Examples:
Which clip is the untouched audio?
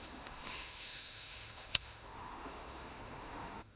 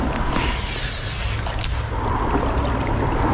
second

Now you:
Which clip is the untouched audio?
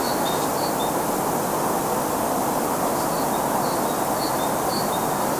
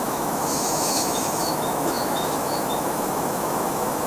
first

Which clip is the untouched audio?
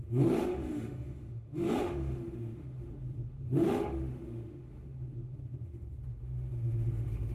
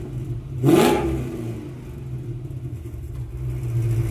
second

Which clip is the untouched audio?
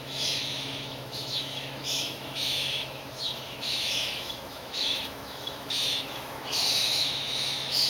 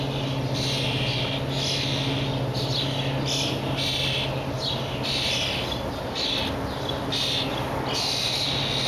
second